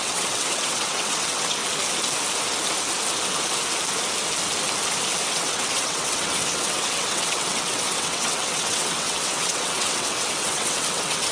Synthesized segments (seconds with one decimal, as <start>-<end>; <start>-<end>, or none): 0.0-1.6; 5.3-11.3